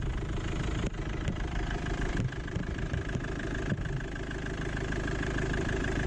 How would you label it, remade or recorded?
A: remade